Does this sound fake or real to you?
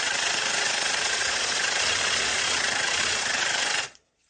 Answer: fake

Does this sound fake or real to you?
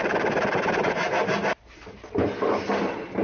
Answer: real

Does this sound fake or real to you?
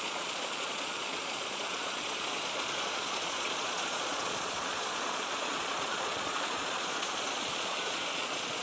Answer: fake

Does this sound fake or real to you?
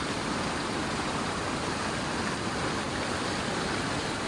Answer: real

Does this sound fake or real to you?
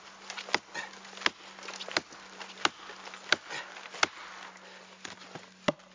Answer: real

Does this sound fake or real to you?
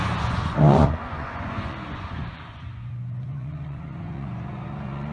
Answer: fake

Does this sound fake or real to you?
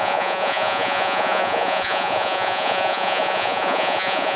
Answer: fake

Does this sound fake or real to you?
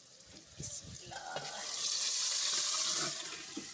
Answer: real